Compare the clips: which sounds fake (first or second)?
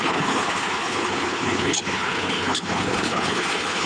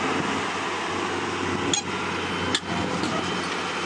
first